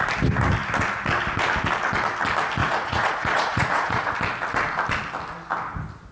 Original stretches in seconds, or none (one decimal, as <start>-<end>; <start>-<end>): 0.0-2.6; 4.1-6.1